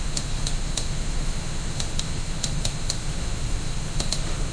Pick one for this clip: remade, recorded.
remade